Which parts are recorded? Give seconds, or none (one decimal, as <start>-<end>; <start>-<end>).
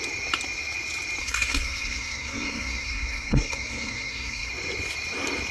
0.0-1.2; 4.5-5.5